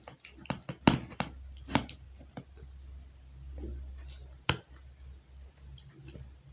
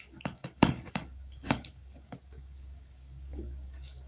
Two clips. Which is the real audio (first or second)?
first